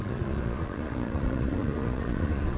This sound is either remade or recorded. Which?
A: remade